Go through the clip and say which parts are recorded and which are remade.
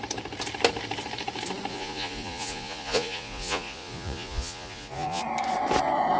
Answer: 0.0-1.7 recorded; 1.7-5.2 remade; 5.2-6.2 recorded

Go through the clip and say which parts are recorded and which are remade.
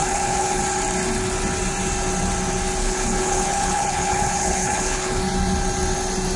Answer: 0.0-0.6 remade; 0.6-2.8 recorded; 2.8-5.2 remade; 5.2-6.4 recorded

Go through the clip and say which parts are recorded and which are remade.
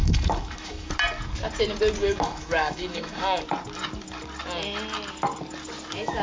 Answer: 0.0-0.9 remade; 0.9-2.0 recorded; 2.0-3.4 remade; 3.4-6.2 recorded